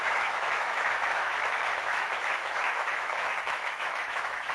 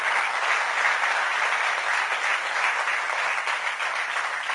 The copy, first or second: first